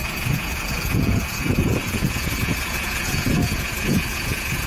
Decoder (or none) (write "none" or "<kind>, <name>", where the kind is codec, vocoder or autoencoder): vocoder, Vocos